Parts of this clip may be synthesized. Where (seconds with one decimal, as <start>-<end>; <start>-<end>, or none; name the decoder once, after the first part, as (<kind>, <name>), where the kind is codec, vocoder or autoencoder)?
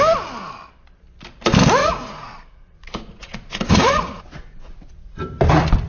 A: 1.8-5.2 (vocoder, Vocos)